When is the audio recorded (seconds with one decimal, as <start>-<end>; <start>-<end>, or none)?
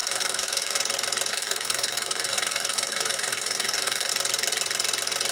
0.8-1.3; 4.1-5.3